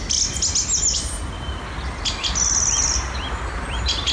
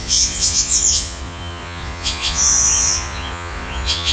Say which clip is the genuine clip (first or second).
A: first